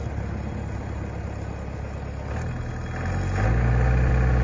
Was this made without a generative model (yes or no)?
yes